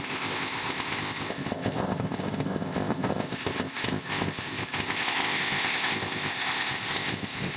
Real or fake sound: fake